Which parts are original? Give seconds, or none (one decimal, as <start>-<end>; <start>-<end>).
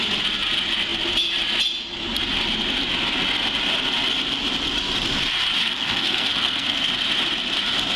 0.0-5.6; 6.9-8.0